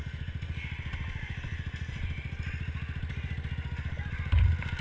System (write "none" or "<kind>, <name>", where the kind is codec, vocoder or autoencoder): none